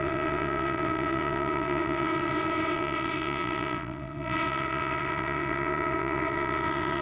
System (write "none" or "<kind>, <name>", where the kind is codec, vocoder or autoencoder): vocoder, WaveNeXt